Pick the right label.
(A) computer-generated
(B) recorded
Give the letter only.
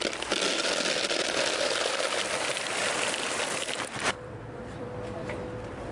A